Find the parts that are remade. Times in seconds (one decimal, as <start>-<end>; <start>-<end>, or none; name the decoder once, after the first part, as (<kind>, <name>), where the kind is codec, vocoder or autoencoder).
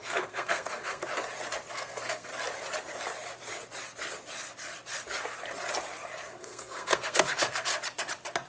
0.0-1.0 (codec, SNAC); 1.7-2.3; 6.4-7.7